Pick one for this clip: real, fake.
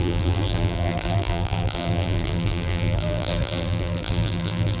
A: fake